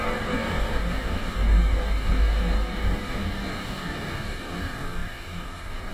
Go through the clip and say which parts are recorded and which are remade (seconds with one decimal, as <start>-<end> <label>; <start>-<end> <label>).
0.0-5.9 remade